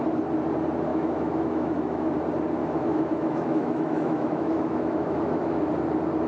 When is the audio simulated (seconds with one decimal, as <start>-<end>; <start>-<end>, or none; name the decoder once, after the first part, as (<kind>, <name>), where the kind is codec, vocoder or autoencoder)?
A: 0.9-2.1 (autoencoder, DAC-VAE); 2.6-5.7